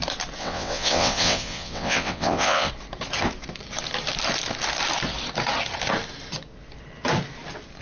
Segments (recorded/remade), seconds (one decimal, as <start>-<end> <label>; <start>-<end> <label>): 0.0-0.4 recorded; 0.4-2.7 remade; 2.7-7.8 recorded

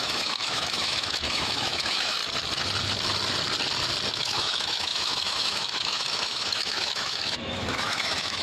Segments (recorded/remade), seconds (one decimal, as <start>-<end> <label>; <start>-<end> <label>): 0.0-2.2 remade; 2.2-4.1 recorded; 4.1-8.4 remade

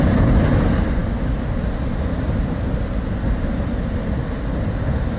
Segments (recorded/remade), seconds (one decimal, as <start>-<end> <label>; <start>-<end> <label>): 0.0-5.2 recorded